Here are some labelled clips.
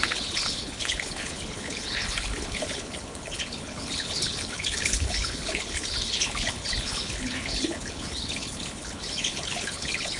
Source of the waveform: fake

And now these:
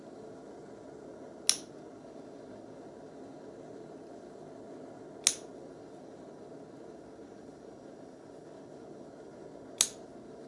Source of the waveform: real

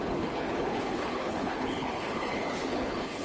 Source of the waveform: fake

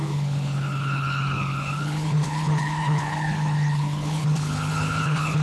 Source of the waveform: fake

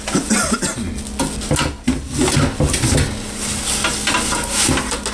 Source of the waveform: real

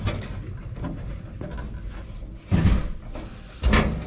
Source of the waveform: real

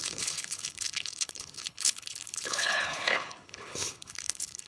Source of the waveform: fake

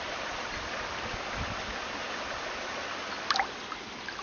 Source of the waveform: real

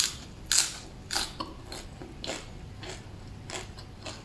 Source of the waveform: real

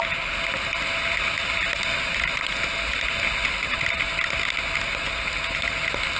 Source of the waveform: real